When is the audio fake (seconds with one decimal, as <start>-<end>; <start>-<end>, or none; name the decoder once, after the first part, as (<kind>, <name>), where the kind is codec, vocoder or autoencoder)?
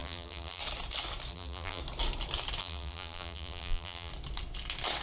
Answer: 0.0-0.6 (vocoder, BigVGAN v2); 1.3-1.8; 2.6-4.1